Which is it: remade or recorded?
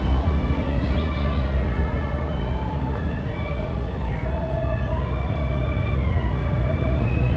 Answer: remade